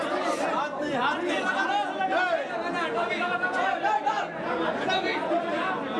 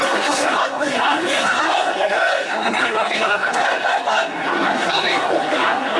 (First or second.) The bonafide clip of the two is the first